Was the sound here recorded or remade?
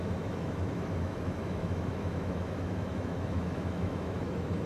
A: remade